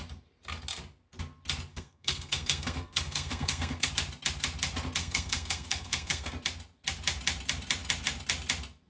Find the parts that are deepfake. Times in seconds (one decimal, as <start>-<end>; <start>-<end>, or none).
1.7-3.9; 5.0-6.3